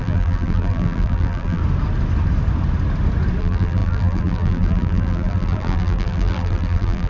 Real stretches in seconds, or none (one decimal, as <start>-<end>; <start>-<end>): 1.6-3.4